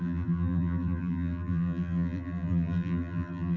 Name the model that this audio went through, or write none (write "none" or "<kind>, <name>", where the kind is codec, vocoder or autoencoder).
vocoder, BigVGAN v2